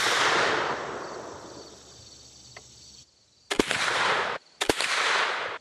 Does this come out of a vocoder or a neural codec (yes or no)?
no